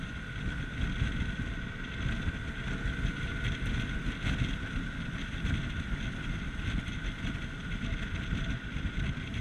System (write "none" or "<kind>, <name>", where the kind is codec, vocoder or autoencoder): none